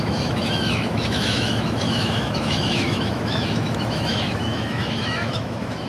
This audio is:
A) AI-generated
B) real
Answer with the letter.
A